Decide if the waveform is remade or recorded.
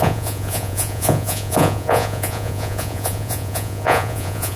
remade